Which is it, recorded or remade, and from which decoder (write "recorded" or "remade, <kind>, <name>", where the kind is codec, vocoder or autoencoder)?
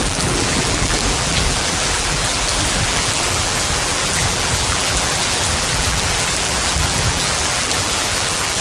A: remade, vocoder, BigVGAN v2